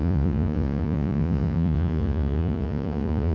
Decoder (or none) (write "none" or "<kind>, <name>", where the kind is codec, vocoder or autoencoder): vocoder, Vocos